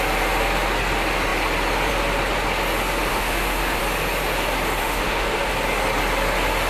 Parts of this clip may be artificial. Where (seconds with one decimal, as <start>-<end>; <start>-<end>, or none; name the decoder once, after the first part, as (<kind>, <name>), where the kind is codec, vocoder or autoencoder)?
3.1-3.8 (autoencoder, DAC-VAE); 4.8-5.5